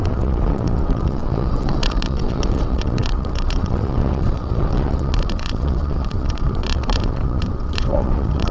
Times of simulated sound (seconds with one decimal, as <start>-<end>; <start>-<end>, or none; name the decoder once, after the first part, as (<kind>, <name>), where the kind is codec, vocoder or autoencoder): 0.0-8.5 (vocoder, WaveNeXt)